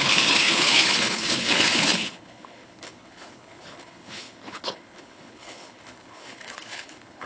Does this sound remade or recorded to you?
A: remade